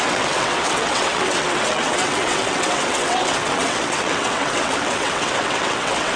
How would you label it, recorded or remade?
remade